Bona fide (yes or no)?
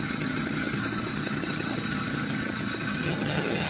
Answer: no